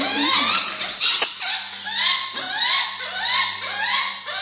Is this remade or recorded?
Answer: recorded